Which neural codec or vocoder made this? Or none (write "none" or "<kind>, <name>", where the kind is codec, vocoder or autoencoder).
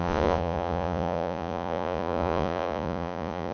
vocoder, Vocos